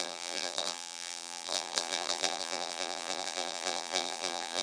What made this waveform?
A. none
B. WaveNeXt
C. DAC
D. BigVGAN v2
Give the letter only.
D